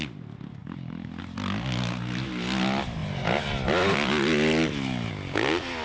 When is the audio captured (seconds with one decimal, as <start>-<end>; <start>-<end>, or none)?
0.0-5.8